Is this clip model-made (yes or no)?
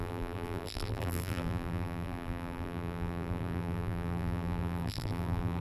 yes